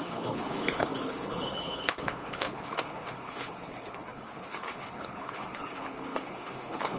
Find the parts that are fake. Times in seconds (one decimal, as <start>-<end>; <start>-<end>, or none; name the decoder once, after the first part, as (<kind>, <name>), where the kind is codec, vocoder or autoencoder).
0.0-7.0 (codec, HILCodec)